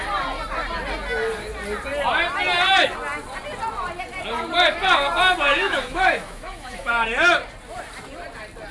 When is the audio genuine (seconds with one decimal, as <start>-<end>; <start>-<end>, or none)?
0.0-5.5; 6.9-8.7